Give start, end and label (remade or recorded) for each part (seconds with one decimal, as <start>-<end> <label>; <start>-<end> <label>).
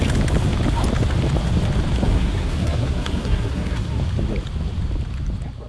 0.0-2.0 recorded; 2.0-4.0 remade; 4.0-5.7 recorded